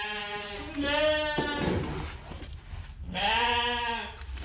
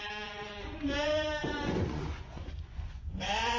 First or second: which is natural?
first